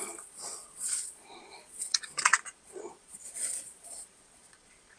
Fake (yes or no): yes